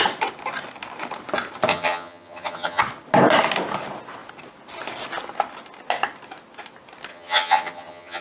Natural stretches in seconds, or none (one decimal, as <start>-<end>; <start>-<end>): 0.0-1.7; 2.8-7.1